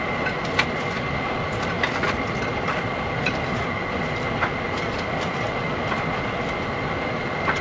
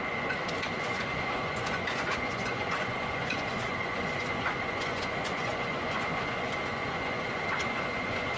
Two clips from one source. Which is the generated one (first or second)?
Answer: second